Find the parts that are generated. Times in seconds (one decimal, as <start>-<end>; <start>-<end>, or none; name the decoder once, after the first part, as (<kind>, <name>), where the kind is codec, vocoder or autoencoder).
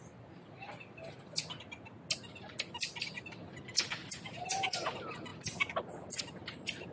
none